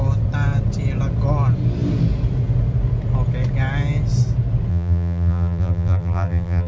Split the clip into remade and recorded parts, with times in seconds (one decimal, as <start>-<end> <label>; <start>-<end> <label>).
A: 0.0-4.7 recorded; 4.7-6.7 remade

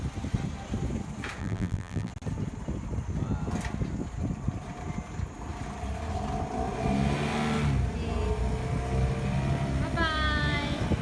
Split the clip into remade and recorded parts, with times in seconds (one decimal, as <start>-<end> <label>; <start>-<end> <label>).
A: 0.0-1.4 recorded; 1.4-2.1 remade; 2.1-11.0 recorded